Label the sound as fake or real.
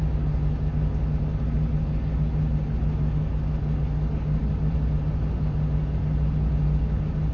real